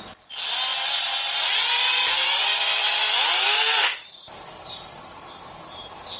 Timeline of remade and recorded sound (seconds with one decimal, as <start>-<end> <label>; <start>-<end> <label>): 0.0-6.2 recorded